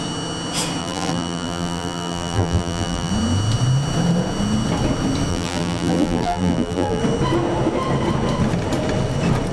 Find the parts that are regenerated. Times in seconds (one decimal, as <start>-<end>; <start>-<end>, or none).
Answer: 0.8-3.1; 5.3-7.0